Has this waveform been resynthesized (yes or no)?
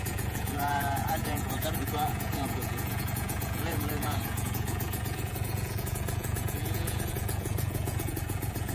yes